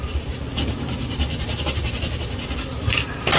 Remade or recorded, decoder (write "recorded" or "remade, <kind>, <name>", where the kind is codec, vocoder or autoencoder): recorded